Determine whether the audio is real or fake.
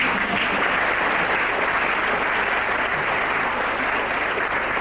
real